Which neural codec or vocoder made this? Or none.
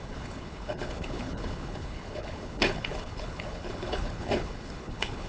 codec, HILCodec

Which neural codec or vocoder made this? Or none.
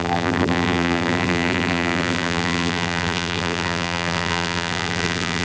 vocoder, BigVGAN v2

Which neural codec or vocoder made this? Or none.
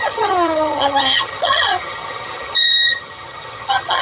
vocoder, HiFi-GAN